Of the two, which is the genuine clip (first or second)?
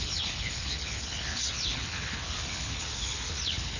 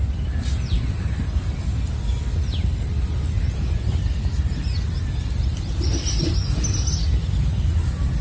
second